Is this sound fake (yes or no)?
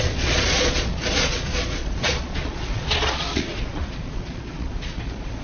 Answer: yes